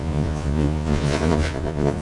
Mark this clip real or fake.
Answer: fake